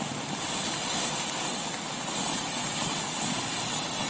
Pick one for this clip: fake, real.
real